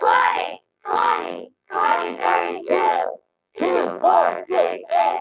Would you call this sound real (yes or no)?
no